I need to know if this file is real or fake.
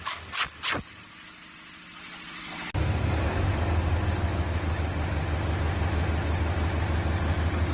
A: real